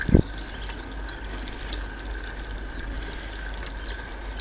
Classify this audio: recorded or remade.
recorded